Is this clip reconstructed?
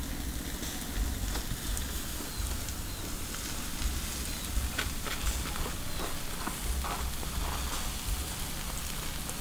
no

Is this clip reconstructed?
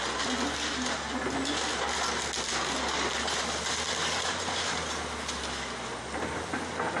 no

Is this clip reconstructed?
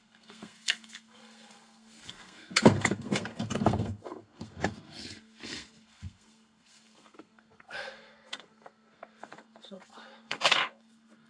yes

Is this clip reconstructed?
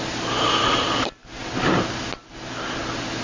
no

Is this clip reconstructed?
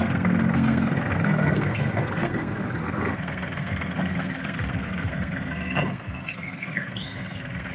yes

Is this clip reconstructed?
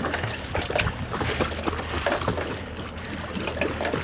no